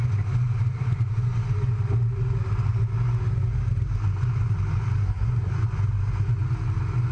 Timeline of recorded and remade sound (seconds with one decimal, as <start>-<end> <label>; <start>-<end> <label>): 0.0-5.0 recorded; 5.0-5.5 remade; 5.5-7.1 recorded